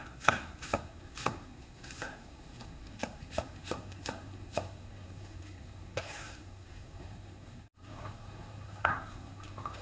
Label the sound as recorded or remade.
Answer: remade